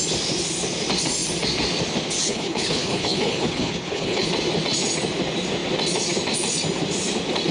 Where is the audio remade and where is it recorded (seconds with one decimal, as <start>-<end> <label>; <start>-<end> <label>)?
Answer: 0.0-2.2 recorded; 2.2-4.3 remade; 4.3-7.5 recorded